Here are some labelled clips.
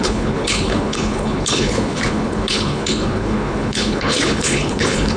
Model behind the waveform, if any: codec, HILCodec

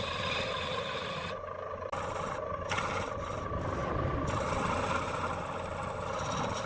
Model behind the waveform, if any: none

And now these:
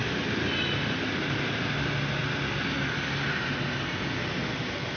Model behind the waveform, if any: none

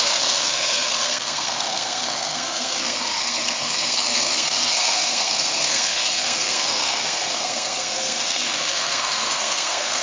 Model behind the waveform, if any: codec, SNAC